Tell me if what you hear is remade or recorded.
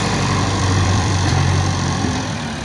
remade